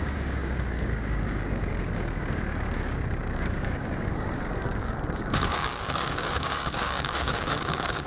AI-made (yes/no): yes